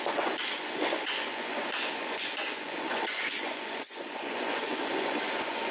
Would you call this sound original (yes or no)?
no